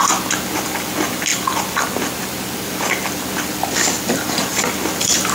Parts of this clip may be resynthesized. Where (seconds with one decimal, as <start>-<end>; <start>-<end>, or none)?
none